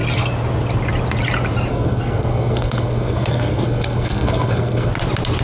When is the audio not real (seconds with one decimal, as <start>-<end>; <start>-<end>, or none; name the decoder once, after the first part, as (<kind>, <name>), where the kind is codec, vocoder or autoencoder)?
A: 1.7-4.9 (codec, SNAC)